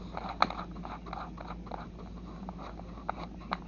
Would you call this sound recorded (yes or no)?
yes